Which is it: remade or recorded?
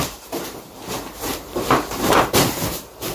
remade